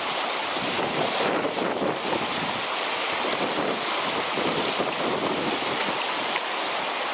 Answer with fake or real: real